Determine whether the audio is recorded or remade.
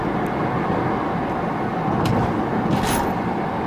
recorded